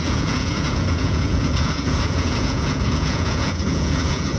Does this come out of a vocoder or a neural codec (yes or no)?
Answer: yes